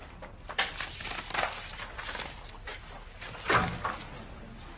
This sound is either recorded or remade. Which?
recorded